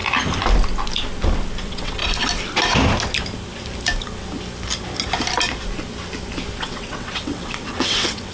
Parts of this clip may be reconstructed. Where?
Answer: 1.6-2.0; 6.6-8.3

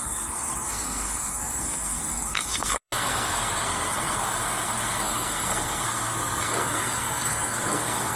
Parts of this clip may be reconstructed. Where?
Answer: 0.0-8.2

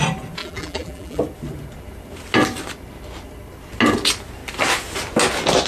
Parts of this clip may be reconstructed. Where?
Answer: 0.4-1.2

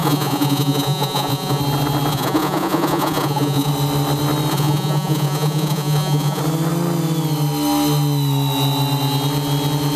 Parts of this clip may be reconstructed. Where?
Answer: 0.0-1.6; 2.1-3.7; 4.5-6.4